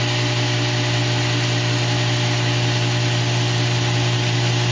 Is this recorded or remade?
recorded